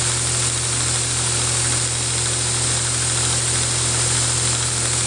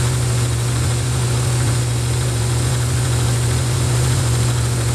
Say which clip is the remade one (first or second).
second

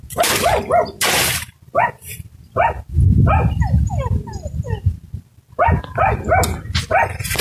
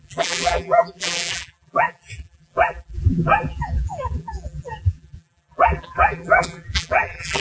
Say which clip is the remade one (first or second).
second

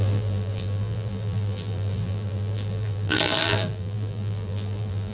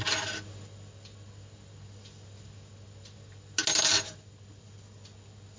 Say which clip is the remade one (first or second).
first